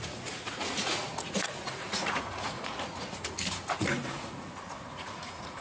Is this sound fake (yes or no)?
yes